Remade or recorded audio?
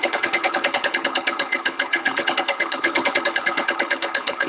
remade